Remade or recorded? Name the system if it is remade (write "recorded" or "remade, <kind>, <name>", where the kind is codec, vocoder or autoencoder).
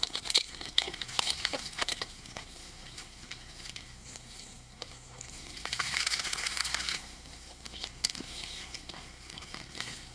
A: remade, codec, SNAC